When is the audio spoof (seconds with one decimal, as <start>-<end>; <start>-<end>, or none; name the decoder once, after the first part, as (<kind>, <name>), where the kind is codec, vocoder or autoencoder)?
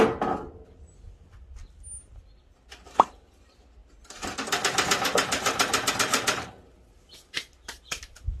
0.0-3.8 (vocoder, BigVGAN v2); 5.9-8.4